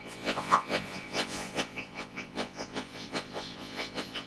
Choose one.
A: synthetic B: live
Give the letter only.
A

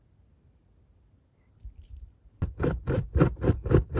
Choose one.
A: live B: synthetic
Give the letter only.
A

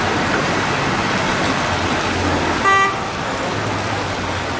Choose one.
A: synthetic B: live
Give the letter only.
B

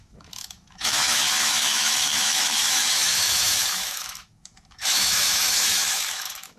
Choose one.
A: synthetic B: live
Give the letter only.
A